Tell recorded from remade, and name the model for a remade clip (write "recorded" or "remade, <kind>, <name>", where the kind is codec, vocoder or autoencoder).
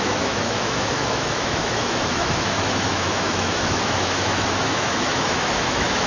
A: remade, autoencoder, DAC-VAE